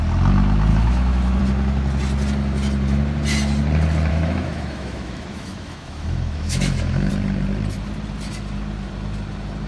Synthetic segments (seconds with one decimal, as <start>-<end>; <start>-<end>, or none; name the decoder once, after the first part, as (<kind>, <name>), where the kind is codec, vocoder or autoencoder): 0.7-1.4 (autoencoder, DAC-VAE); 4.1-7.1